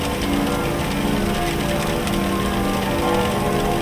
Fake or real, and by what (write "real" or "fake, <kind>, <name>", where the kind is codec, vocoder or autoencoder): real